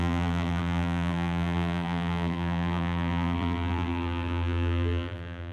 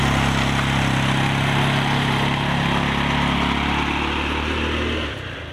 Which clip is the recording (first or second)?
second